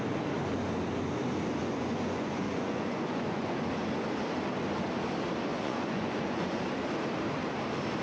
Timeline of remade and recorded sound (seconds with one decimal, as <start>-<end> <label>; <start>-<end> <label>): 0.0-1.6 recorded; 1.6-3.7 remade; 3.7-5.5 recorded; 5.5-6.6 remade; 6.6-8.0 recorded